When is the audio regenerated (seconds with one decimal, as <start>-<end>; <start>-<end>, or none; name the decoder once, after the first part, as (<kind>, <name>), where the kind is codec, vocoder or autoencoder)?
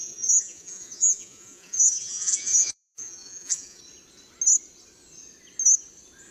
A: 0.0-3.8 (vocoder, Vocos)